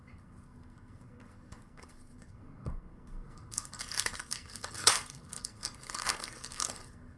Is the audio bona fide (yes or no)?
no